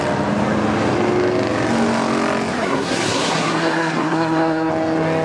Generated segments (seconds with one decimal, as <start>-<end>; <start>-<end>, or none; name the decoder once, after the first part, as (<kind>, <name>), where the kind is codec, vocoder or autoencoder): 2.5-4.7 (codec, SNAC)

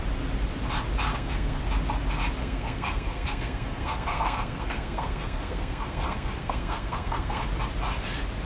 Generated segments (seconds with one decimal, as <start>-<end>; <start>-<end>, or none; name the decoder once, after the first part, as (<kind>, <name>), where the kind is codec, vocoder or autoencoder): 1.1-1.6 (codec, SNAC); 2.4-7.4

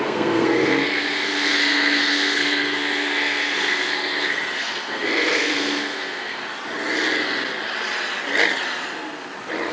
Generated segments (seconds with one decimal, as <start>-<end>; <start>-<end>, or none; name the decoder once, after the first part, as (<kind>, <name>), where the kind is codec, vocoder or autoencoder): 0.0-6.4 (codec, SNAC)

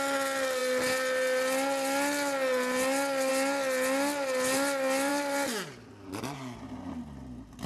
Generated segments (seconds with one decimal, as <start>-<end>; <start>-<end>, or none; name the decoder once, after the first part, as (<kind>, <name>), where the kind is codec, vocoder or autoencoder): none

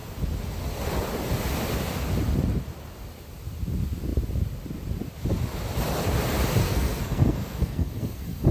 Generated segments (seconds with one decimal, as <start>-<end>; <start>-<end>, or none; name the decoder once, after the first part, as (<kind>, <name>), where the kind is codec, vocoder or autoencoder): 6.6-8.5 (codec, SNAC)